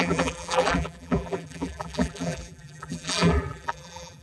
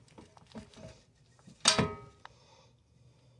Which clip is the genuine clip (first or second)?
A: second